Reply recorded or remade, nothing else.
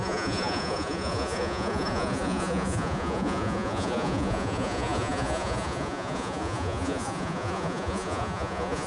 remade